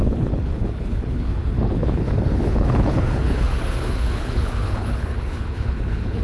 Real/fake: fake